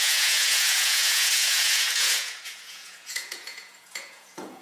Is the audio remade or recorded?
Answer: remade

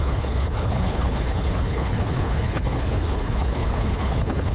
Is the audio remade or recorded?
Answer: remade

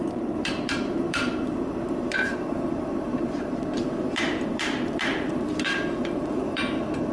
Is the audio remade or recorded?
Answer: remade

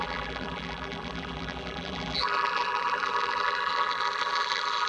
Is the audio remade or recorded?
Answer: remade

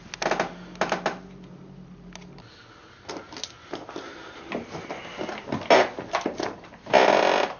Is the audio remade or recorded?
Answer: recorded